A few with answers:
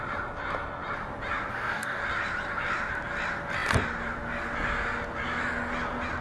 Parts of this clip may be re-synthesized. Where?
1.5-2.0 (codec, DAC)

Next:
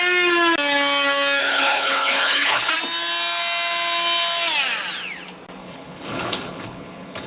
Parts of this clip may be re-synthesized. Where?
1.4-2.7 (codec, HILCodec); 5.6-7.3

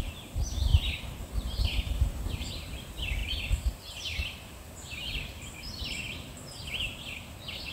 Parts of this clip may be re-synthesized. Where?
0.7-2.5 (vocoder, BigVGAN v2)

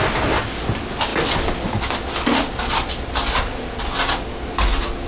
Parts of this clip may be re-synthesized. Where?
none

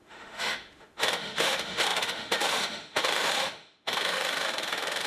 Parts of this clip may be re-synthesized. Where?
0.0-5.1 (autoencoder, DAC-VAE)

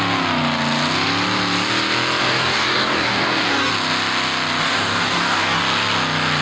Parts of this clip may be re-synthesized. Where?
2.2-3.7 (codec, DAC); 4.6-5.6